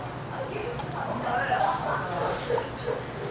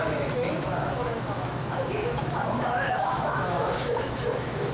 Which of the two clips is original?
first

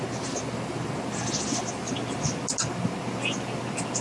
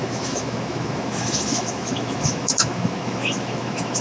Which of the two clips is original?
first